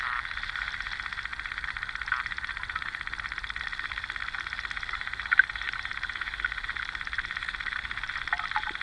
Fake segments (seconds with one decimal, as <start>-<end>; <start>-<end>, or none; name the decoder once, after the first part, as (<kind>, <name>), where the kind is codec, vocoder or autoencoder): none